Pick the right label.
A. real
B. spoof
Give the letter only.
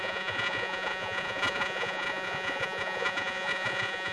B